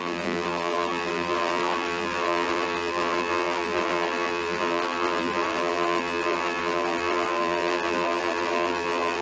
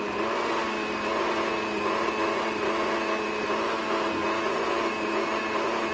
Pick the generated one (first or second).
first